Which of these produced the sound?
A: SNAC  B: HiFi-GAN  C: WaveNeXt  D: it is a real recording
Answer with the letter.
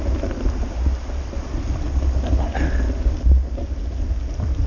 D